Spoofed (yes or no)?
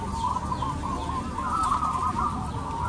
no